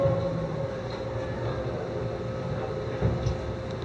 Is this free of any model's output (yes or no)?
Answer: yes